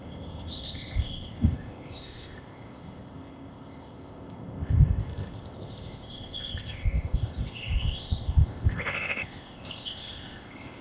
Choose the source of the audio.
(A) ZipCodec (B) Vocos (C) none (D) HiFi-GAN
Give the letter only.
A